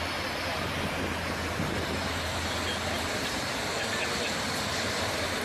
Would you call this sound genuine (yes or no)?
yes